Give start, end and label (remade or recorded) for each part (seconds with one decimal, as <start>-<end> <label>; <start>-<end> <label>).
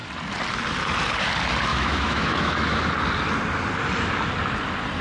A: 0.0-1.7 recorded; 1.7-2.8 remade; 2.8-5.0 recorded